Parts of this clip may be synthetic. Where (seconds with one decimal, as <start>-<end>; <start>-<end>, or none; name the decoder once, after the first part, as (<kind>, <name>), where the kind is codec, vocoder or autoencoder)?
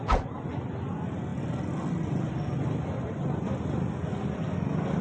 none